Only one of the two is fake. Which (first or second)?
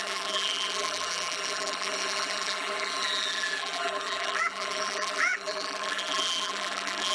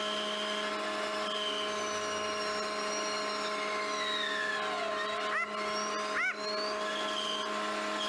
first